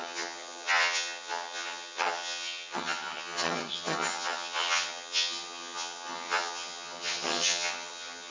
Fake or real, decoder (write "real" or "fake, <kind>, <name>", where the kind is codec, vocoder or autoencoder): fake, vocoder, HiFi-GAN